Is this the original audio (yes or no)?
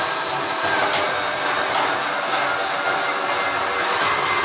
yes